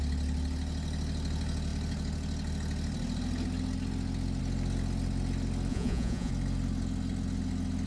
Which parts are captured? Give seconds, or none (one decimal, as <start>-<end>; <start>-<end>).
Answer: 0.0-5.7; 6.3-7.9